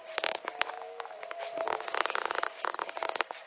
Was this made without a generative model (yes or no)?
no